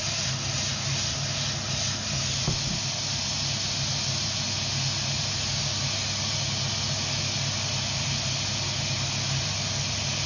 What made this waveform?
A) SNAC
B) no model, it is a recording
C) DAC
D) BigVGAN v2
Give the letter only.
B